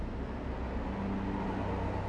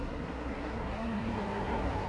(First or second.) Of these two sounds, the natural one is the first